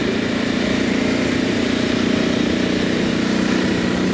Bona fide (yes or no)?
no